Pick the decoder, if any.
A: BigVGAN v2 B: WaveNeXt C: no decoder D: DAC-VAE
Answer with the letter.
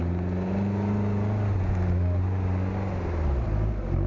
C